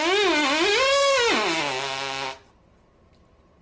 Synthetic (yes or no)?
no